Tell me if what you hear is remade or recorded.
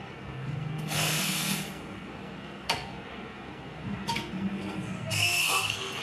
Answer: remade